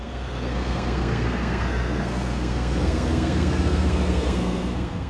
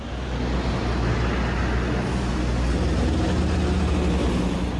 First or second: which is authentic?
second